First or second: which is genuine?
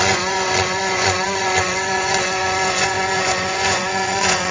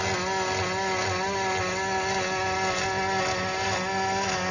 second